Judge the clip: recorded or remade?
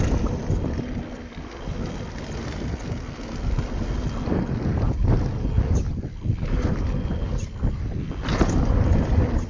recorded